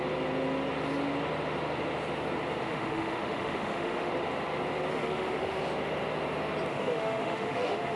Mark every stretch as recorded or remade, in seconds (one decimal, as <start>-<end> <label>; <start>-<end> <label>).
0.0-2.6 recorded; 2.6-4.1 remade; 4.1-4.9 recorded; 4.9-5.6 remade; 5.6-6.7 recorded; 6.7-8.0 remade